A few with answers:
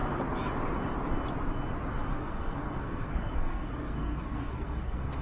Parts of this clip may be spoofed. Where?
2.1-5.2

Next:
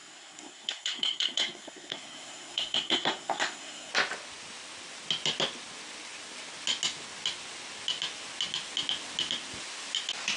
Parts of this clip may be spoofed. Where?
0.0-3.9

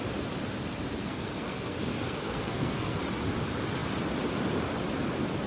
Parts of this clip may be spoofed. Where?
1.0-3.0

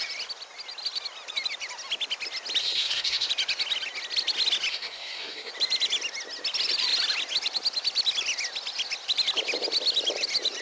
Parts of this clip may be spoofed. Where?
2.6-3.3; 4.7-5.5

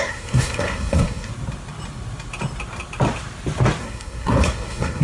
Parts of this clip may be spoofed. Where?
0.0-1.3; 3.8-5.0

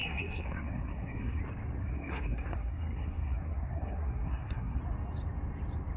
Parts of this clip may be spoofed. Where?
0.0-1.4; 1.8-4.8

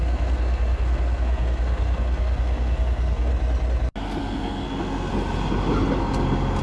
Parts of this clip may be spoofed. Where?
0.0-3.3; 4.2-5.1